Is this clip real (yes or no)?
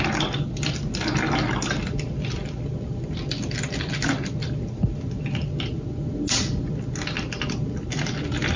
yes